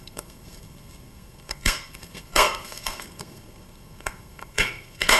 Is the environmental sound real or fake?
fake